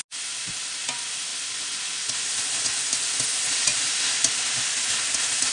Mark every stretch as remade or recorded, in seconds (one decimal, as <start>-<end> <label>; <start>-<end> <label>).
0.0-5.5 recorded